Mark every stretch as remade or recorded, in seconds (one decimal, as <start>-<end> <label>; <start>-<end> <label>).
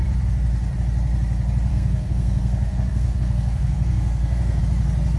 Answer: 0.0-1.7 recorded; 1.7-4.6 remade; 4.6-5.2 recorded